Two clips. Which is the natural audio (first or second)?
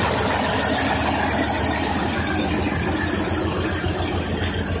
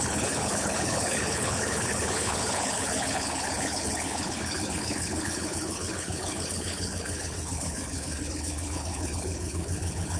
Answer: first